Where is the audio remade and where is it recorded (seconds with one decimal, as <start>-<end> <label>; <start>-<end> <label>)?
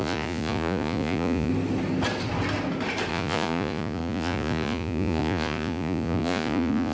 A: 0.0-1.5 remade; 1.5-3.1 recorded; 3.1-6.9 remade